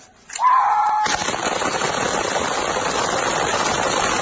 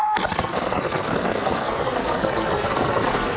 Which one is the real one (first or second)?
first